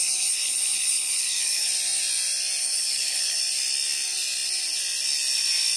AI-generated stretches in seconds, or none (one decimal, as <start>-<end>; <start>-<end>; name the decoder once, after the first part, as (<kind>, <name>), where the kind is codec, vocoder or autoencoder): 0.0-1.7 (codec, HILCodec); 2.6-3.4